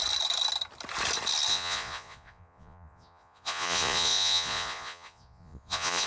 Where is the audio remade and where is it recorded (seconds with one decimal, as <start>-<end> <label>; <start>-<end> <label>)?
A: 0.0-1.5 recorded; 1.5-6.1 remade